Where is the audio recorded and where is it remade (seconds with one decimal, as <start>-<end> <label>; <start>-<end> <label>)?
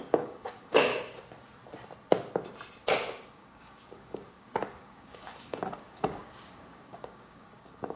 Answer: 0.0-0.9 remade; 0.9-3.3 recorded; 3.3-8.0 remade